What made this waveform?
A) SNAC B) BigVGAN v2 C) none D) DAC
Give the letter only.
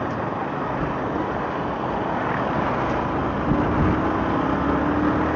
C